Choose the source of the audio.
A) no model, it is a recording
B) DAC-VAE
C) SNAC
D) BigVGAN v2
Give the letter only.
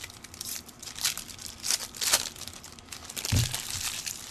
D